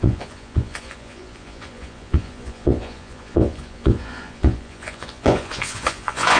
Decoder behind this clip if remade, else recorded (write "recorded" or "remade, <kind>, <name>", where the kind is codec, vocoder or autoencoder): remade, vocoder, Vocos